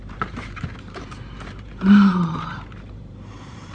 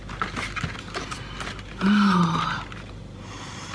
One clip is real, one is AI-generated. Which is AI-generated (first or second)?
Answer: first